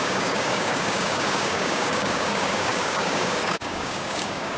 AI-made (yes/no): yes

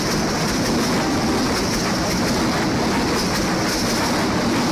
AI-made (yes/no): no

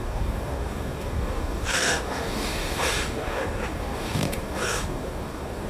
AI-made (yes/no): yes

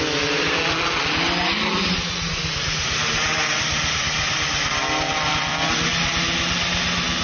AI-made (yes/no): no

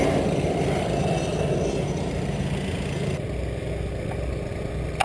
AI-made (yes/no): no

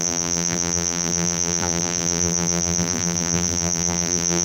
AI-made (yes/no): yes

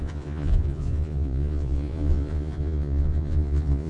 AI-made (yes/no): yes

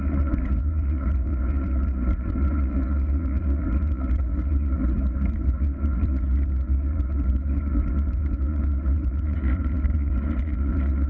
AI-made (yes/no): yes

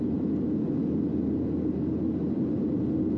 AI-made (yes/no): no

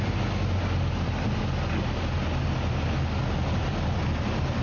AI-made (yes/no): no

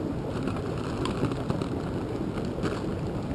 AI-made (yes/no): no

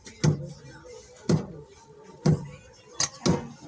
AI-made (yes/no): no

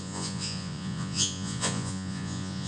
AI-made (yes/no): yes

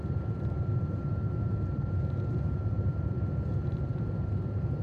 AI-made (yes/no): yes